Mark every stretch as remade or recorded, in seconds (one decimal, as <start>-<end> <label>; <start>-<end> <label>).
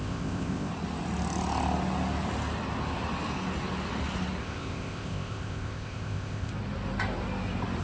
0.0-0.7 remade; 0.7-4.4 recorded; 4.4-6.5 remade; 6.5-7.8 recorded